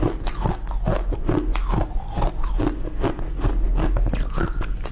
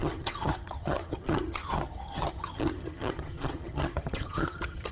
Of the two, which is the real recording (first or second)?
first